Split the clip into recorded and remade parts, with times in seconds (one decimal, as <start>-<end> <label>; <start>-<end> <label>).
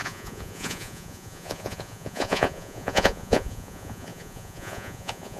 0.0-5.4 remade